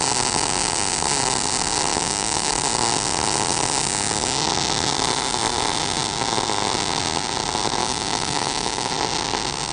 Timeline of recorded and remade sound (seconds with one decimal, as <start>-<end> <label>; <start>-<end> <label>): 0.0-1.9 recorded; 1.9-2.5 remade; 2.5-7.8 recorded; 7.8-8.9 remade; 8.9-9.7 recorded

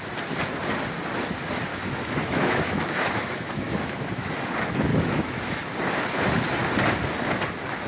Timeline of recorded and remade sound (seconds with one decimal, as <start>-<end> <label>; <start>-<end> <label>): 0.0-1.7 recorded; 1.7-4.5 remade; 4.5-4.9 recorded; 4.9-5.6 remade; 5.6-7.9 recorded